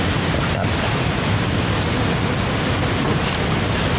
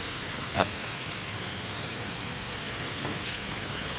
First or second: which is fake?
second